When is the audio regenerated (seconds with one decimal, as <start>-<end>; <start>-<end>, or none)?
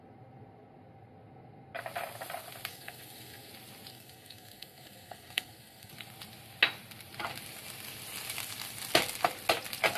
2.7-3.5; 3.9-5.9